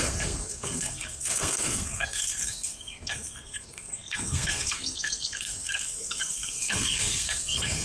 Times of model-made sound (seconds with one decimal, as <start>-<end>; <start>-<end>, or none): 0.0-7.8